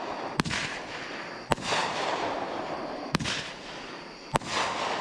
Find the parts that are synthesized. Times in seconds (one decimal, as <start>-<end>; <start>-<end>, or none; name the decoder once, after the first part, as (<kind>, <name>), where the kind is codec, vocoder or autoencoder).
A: 1.8-3.2 (vocoder, BigVGAN v2)